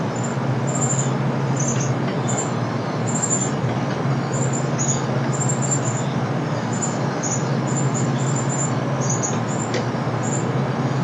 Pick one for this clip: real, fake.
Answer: real